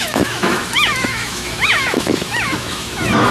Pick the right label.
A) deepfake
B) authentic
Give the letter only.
A